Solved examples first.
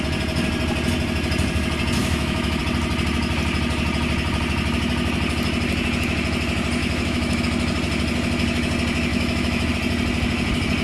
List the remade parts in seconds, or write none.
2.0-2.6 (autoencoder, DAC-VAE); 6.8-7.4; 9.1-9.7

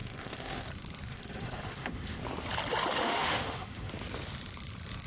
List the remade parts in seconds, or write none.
0.0-0.7 (autoencoder, DAC-VAE); 1.1-2.2; 3.0-3.9